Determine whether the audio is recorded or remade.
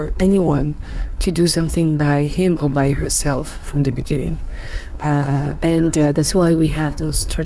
remade